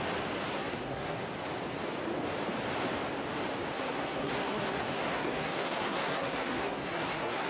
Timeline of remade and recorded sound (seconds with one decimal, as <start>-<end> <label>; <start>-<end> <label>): 0.0-0.5 recorded; 0.5-1.2 remade; 1.2-3.7 recorded; 3.7-7.5 remade